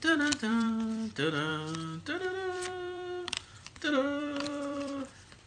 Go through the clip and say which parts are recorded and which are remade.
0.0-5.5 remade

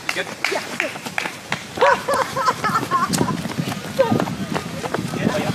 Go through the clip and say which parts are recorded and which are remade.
0.0-3.3 remade; 3.3-4.6 recorded; 4.6-5.5 remade

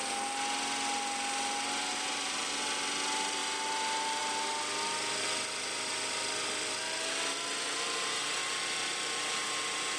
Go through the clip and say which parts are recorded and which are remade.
0.0-1.9 recorded; 1.9-2.5 remade; 2.5-10.0 recorded

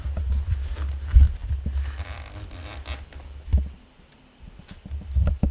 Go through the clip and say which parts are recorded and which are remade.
0.0-5.5 recorded

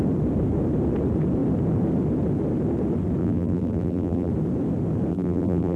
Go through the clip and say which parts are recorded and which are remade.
0.0-3.2 recorded; 3.2-4.3 remade; 4.3-5.1 recorded; 5.1-5.8 remade